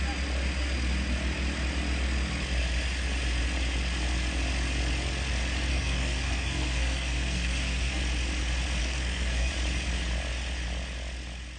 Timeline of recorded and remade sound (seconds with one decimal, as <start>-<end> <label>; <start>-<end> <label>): 0.0-5.7 recorded; 5.7-8.0 remade; 8.0-8.8 recorded; 8.8-9.5 remade; 9.5-11.6 recorded